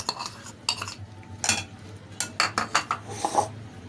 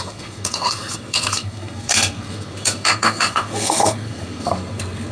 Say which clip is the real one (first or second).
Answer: first